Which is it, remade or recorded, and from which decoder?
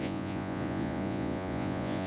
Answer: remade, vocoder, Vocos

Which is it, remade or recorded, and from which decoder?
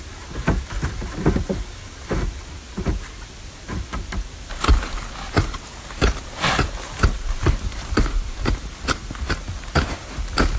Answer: recorded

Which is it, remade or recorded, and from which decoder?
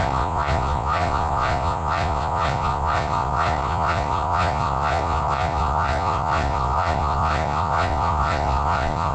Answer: remade, vocoder, Vocos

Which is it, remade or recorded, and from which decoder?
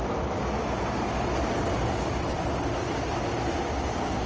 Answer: recorded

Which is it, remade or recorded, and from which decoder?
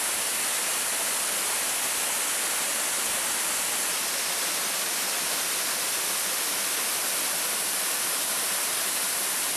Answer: recorded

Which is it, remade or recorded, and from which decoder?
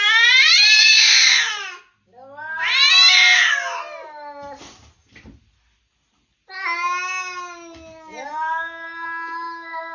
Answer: recorded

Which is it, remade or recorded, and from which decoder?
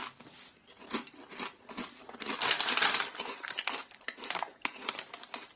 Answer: recorded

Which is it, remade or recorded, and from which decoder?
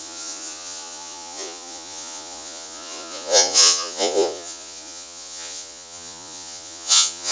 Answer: remade, vocoder, Vocos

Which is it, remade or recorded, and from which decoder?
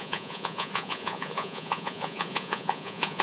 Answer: remade, vocoder, Vocos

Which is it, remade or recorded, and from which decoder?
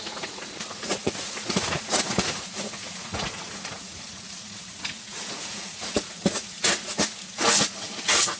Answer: remade, vocoder, Vocos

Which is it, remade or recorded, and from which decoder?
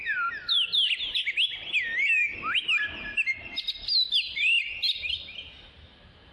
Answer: recorded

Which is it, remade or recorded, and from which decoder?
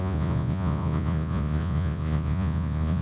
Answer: remade, vocoder, Vocos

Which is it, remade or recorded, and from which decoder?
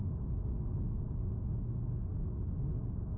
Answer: recorded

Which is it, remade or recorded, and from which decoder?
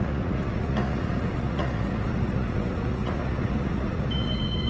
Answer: remade, vocoder, Vocos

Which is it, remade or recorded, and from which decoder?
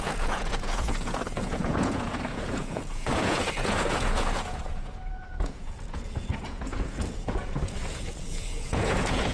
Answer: remade, vocoder, Vocos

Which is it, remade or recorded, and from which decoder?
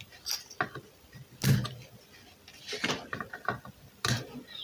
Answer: recorded